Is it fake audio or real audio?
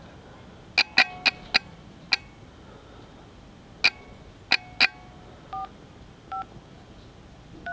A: real